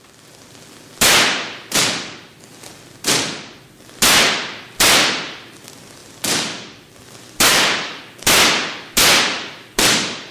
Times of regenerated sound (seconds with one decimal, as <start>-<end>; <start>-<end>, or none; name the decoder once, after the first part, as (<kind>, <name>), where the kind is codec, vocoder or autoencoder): 6.0-6.9 (vocoder, BigVGAN v2); 7.5-8.0